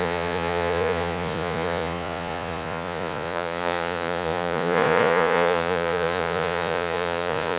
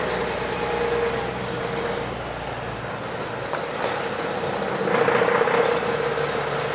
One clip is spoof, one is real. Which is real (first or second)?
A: second